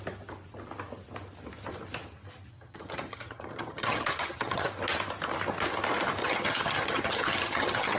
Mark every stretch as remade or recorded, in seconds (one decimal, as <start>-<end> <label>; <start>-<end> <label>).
0.0-2.5 recorded; 2.5-4.7 remade; 4.7-6.2 recorded; 6.2-8.0 remade